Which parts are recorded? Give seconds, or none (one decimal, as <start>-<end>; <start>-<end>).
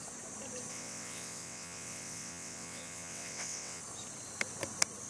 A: 0.0-0.7; 3.8-5.1